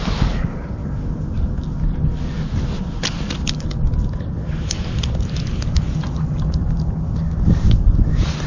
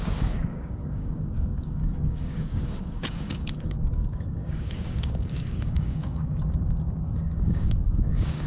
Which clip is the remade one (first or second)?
second